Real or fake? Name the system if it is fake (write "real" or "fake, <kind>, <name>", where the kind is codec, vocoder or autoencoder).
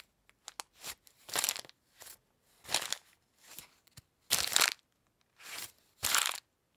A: real